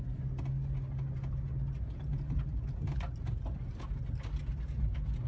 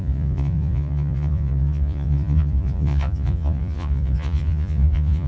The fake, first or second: second